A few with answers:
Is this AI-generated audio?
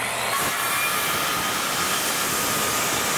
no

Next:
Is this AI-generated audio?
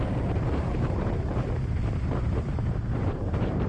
yes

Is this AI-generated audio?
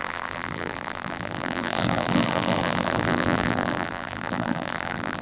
yes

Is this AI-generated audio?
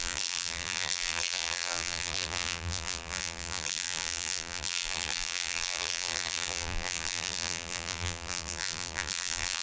yes